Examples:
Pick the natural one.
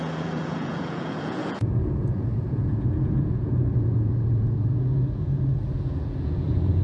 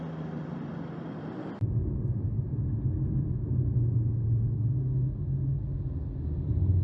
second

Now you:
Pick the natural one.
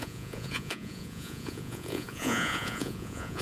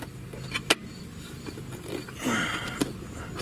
second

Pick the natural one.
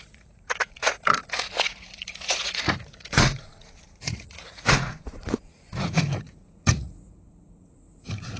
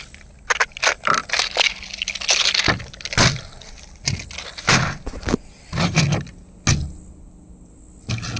second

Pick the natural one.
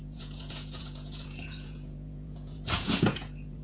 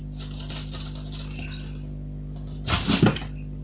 second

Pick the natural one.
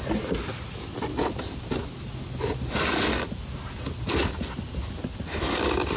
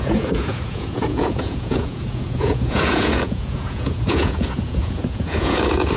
first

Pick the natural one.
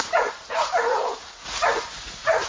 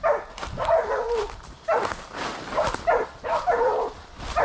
second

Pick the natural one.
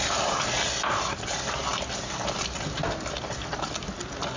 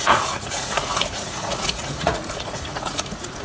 first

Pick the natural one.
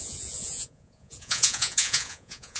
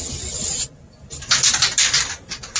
second